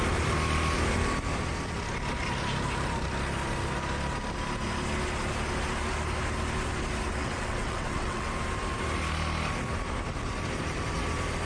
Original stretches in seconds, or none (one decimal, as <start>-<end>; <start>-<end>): 0.0-7.2; 8.3-11.5